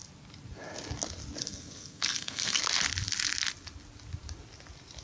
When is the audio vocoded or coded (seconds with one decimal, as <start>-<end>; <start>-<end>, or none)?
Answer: 1.4-2.6